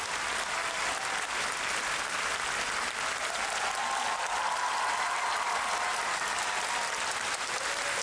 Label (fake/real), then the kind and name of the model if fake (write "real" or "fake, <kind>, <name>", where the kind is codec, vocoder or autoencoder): real